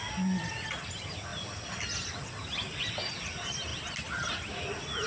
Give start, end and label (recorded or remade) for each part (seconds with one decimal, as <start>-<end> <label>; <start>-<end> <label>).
0.0-5.1 recorded